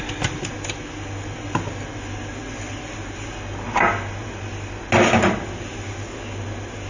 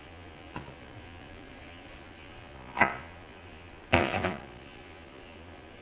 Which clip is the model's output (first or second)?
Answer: second